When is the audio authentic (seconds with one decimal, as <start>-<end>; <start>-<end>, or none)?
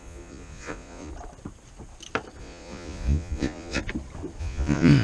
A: 1.1-2.4; 3.8-4.4